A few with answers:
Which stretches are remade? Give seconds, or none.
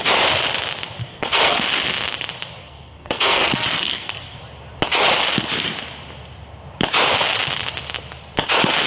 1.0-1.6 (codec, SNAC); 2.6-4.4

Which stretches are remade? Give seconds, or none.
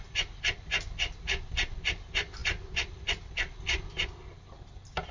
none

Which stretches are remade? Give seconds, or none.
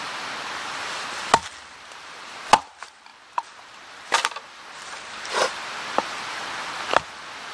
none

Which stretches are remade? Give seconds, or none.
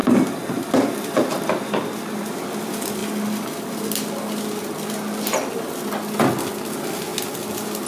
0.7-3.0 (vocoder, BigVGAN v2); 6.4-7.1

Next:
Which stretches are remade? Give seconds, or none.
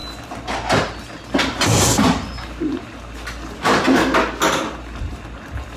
none